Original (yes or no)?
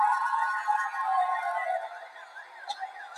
yes